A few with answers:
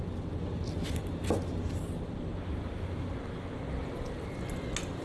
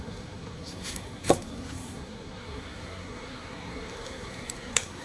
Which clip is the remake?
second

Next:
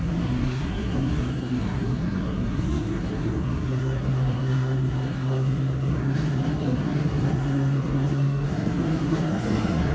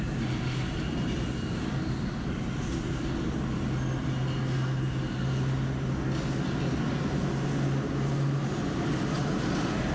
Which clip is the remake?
first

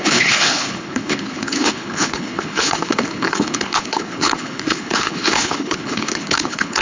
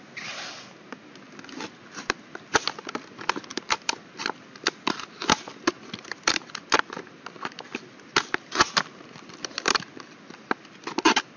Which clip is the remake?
first